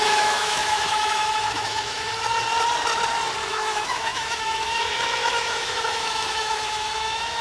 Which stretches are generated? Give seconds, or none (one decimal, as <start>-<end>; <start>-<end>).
0.0-2.1; 3.5-7.4